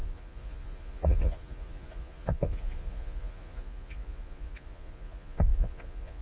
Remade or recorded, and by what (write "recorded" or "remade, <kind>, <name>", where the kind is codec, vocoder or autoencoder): remade, vocoder, Vocos